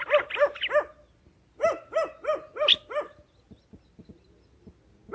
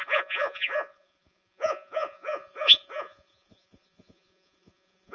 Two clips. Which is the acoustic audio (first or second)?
first